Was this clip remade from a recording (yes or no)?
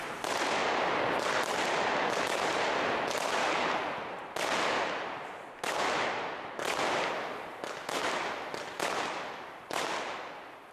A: no